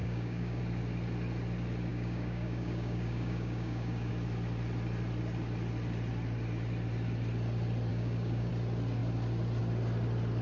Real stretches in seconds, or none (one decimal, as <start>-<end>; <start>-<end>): 0.6-1.9; 4.1-7.9; 8.5-10.4